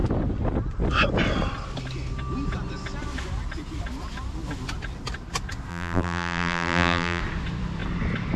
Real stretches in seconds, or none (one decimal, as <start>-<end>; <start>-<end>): 0.0-5.7; 7.2-8.4